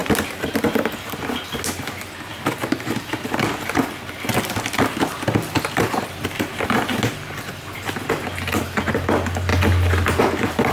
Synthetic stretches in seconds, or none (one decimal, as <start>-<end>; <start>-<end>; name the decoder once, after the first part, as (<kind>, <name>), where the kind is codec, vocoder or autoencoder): none